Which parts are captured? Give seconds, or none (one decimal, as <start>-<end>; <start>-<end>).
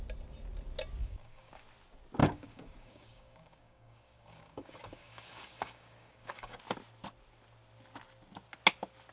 0.0-1.0; 1.6-2.2; 6.6-9.1